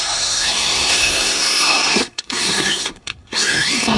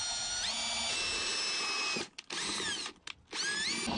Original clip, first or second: second